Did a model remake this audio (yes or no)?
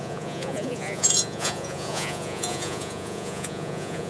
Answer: yes